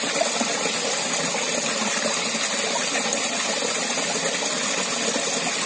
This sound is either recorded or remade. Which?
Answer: recorded